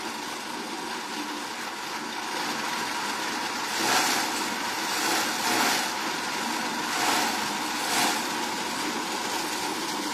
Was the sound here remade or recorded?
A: recorded